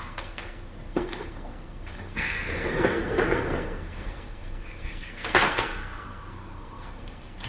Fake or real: fake